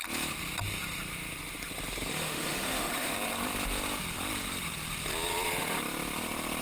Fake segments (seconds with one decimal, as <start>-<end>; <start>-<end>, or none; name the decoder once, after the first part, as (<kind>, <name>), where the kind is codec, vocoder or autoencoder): 2.1-3.1 (autoencoder, DAC-VAE)